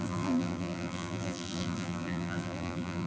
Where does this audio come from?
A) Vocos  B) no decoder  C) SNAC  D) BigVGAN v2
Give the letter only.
D